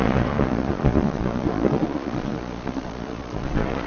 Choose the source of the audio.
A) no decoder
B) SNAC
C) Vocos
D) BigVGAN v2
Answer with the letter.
C